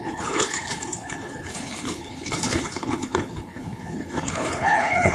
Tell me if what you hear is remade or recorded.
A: remade